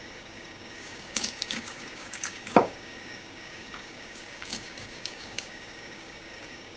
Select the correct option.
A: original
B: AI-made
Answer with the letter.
B